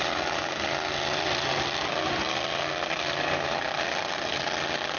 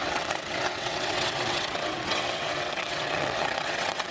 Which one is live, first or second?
first